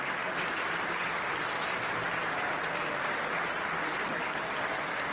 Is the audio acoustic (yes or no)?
yes